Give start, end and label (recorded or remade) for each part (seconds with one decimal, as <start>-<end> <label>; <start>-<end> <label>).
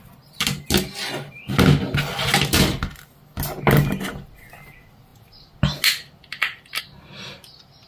0.0-7.9 recorded